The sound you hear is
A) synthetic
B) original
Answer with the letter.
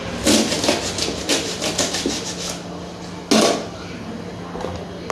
B